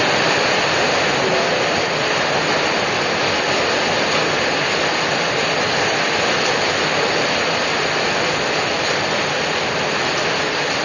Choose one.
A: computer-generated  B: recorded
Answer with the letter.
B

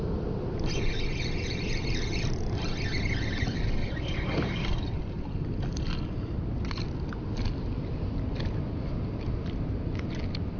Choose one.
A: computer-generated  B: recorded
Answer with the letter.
B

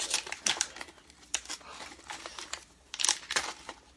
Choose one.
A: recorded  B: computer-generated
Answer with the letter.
A